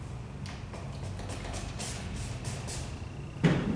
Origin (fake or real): real